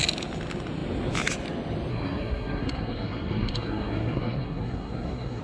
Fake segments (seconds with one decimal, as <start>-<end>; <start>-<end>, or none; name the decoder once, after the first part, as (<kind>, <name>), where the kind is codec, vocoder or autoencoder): 1.9-5.4 (codec, SNAC)